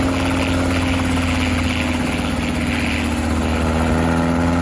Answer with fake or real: real